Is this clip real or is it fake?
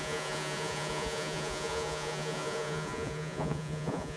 fake